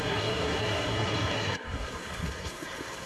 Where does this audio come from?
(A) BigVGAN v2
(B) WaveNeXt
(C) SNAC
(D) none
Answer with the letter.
C